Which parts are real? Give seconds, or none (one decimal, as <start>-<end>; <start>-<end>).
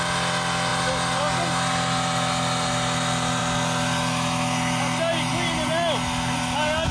0.0-6.9